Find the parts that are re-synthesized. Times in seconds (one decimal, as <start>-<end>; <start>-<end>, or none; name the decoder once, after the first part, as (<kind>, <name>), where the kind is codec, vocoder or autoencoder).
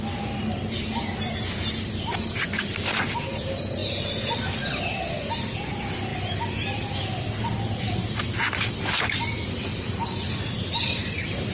none